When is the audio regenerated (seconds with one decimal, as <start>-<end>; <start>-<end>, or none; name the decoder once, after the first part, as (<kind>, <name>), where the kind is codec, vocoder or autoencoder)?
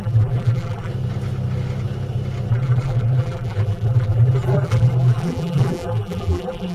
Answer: 0.0-0.9 (vocoder, BigVGAN v2); 2.5-6.7